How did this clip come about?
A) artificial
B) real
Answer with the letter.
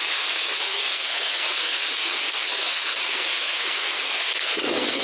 A